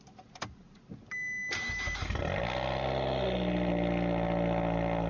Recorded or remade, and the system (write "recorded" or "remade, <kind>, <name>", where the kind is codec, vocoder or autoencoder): recorded